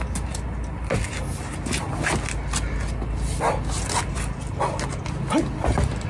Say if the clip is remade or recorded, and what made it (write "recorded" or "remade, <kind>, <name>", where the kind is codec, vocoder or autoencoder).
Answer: recorded